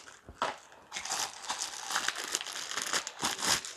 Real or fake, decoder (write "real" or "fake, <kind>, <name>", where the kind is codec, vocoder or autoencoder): real